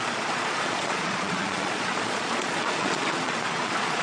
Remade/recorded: remade